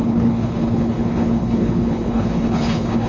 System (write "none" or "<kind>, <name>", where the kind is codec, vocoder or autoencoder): codec, HILCodec